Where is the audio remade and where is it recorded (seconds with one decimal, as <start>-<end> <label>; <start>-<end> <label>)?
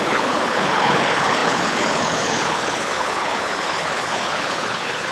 0.0-5.1 remade